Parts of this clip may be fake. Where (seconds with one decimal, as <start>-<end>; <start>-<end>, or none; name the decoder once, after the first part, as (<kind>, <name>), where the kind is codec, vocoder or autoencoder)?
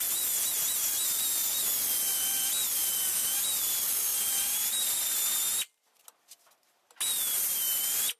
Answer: none